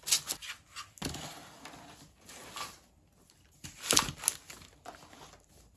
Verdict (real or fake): real